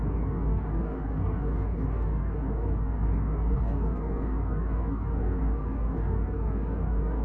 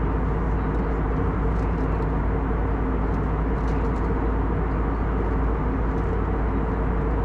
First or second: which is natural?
second